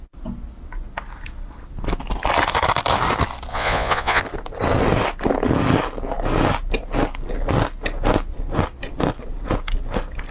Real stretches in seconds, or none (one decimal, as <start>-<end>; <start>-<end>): 0.0-3.5; 4.2-10.3